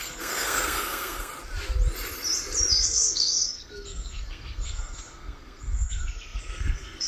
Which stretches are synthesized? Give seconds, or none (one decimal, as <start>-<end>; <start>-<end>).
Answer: 0.0-1.3; 2.7-7.1